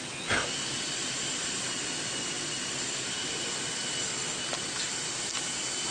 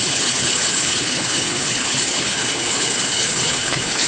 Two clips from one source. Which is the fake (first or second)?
second